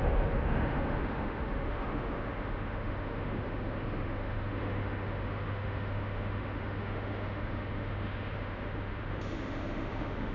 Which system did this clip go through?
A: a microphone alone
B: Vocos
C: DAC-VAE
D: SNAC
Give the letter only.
C